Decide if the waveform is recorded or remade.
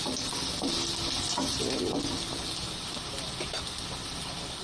recorded